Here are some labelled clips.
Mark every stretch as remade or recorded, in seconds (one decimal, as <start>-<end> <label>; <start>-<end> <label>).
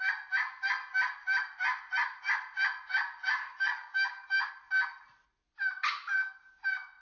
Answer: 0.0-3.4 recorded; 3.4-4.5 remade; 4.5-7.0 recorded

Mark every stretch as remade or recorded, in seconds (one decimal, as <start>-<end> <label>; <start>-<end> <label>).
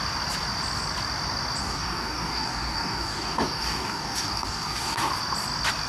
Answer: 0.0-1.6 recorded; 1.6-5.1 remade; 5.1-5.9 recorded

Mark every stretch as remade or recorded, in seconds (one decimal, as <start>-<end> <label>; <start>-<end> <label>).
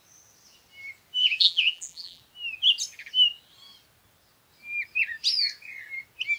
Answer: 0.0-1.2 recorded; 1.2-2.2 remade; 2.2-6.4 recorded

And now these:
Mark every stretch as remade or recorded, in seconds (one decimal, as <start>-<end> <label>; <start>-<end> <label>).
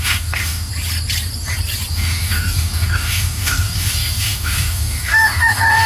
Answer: 0.0-0.7 remade; 0.7-1.9 recorded; 1.9-5.9 remade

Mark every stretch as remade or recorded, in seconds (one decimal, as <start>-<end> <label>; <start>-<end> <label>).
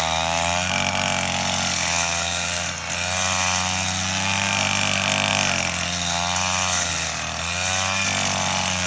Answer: 0.0-8.9 recorded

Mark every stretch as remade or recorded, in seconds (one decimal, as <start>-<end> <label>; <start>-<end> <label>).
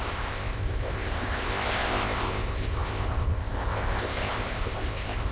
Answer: 0.0-5.3 remade